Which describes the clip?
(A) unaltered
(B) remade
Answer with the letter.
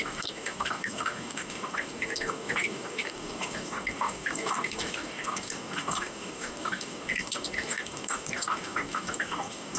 B